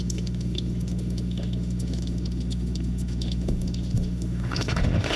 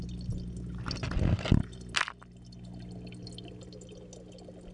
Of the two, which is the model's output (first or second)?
first